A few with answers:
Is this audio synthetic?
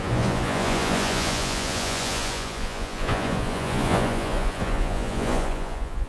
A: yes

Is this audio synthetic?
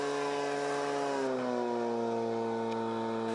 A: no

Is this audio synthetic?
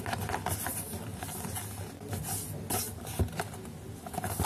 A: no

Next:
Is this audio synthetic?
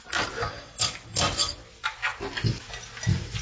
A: no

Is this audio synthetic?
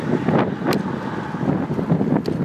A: no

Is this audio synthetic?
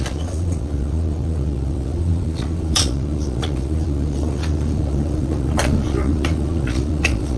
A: yes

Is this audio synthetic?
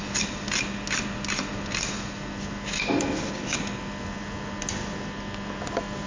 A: no